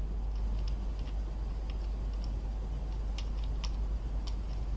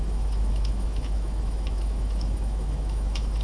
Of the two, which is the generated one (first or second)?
second